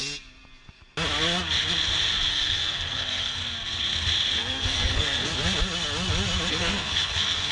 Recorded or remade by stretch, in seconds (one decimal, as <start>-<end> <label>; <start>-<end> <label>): 0.0-2.3 recorded; 2.3-3.4 remade; 3.4-4.4 recorded; 4.4-5.3 remade; 5.3-6.5 recorded; 6.5-7.5 remade